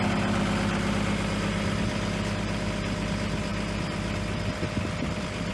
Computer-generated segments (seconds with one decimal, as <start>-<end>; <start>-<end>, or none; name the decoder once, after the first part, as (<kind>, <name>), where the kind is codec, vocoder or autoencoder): none